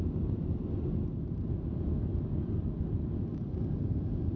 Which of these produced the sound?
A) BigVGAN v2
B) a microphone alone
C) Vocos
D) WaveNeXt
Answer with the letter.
B